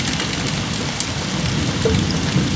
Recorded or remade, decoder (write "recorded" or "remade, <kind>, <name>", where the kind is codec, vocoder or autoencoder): recorded